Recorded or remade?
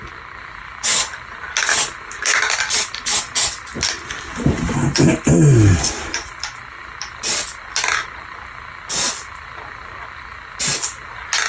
recorded